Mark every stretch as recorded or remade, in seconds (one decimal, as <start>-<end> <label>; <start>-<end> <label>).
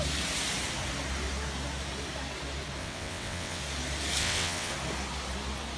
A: 0.0-2.8 recorded; 2.8-3.6 remade; 3.6-4.2 recorded; 4.2-4.7 remade; 4.7-5.8 recorded